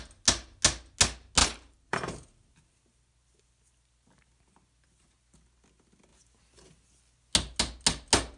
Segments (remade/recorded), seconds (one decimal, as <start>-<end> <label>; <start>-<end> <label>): 0.0-1.4 recorded; 1.4-2.5 remade; 2.5-8.4 recorded